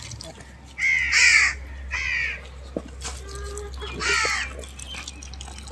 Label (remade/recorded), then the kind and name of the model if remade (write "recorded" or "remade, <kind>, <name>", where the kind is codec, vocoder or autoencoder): recorded